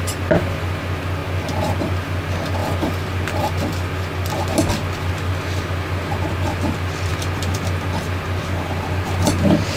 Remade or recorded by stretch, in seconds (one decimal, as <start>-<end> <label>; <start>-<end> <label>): 0.0-1.2 remade; 1.2-2.2 recorded; 2.2-2.6 remade; 2.6-5.1 recorded; 5.1-7.1 remade; 7.1-8.4 recorded; 8.4-9.8 remade